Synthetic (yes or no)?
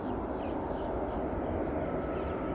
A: no